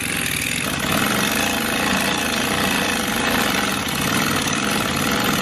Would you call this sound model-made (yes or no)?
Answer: no